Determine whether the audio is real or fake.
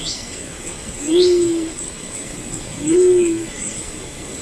fake